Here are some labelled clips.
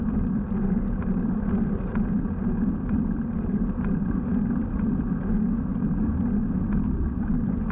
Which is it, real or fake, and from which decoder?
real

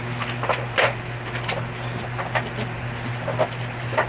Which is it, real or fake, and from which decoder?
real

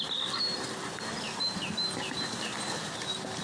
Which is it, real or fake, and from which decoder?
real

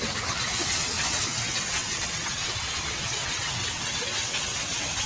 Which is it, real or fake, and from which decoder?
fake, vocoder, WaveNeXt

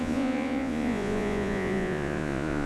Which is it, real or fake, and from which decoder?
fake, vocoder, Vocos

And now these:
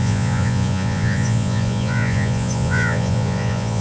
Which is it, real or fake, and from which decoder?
fake, vocoder, Vocos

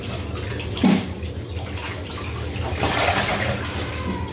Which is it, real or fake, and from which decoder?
real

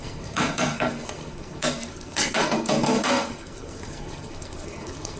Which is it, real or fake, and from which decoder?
fake, codec, SNAC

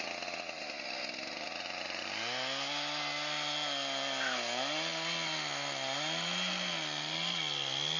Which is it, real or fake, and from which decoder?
real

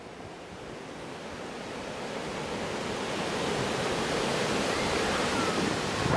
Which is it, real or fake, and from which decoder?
real